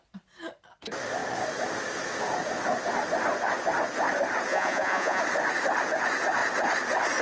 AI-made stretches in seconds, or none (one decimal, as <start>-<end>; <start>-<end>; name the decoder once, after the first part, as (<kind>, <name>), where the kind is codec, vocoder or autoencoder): 4.5-5.2 (vocoder, Vocos)